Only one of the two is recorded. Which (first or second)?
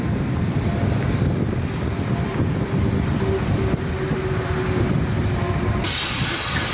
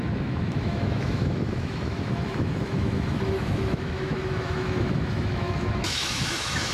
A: first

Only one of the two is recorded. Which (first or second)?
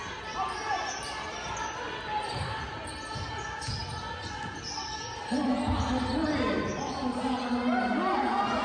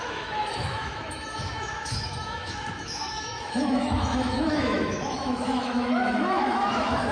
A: first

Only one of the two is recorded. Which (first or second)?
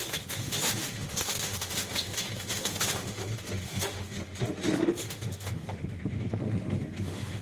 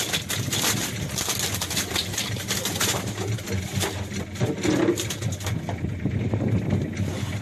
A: second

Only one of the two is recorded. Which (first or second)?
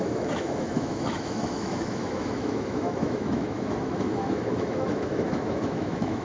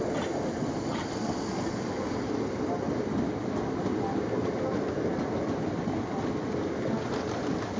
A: second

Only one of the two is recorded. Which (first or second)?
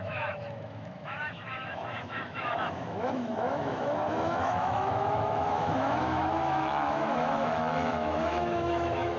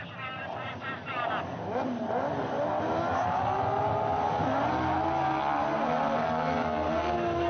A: second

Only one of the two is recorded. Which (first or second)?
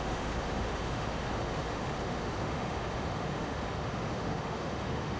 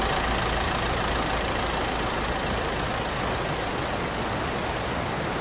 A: second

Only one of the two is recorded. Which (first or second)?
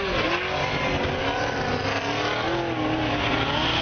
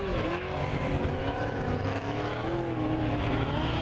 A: first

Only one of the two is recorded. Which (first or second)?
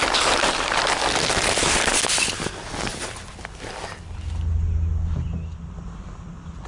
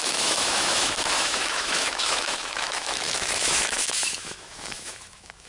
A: first